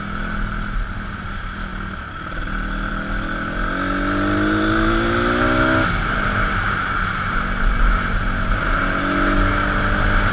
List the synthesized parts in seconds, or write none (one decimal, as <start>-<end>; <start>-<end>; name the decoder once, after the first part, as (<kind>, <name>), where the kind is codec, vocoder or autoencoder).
none